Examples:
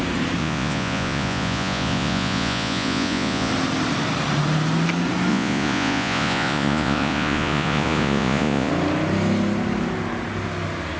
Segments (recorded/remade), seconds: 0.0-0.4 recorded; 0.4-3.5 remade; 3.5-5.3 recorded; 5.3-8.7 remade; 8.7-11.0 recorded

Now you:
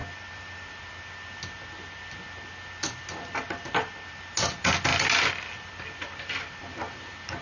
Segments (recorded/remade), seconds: 0.0-7.4 recorded

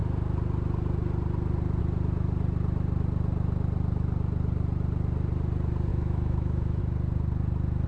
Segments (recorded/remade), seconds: 0.0-5.9 recorded; 5.9-6.8 remade; 6.8-7.9 recorded

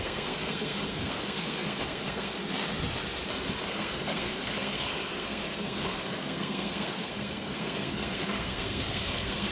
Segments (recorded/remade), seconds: 0.0-2.4 remade; 2.4-3.7 recorded; 3.7-9.5 remade

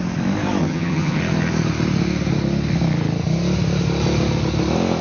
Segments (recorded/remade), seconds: 0.0-0.6 recorded; 0.6-1.2 remade; 1.2-5.0 recorded